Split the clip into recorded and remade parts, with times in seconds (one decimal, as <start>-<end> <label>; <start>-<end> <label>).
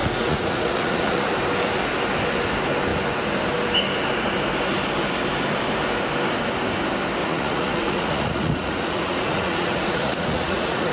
0.0-1.3 remade; 1.3-7.2 recorded; 7.2-10.9 remade